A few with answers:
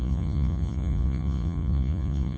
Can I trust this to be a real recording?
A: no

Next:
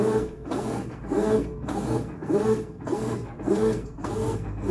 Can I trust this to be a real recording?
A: no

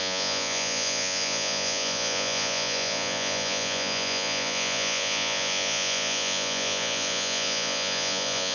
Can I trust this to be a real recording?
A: no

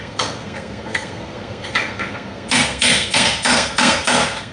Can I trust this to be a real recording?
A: no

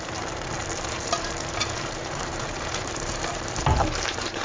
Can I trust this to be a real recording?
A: no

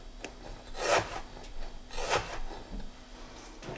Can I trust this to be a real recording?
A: yes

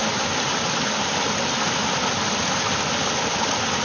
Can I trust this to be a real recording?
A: yes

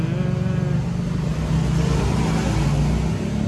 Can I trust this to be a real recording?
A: yes